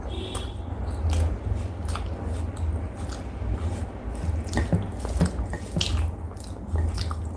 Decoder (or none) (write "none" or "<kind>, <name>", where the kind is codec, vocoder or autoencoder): none